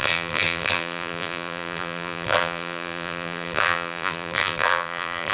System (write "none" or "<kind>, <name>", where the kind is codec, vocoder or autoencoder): vocoder, BigVGAN v2